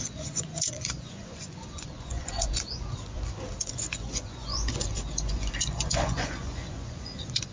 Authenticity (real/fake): fake